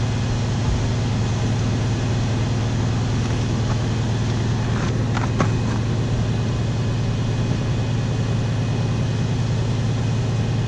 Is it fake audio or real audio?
real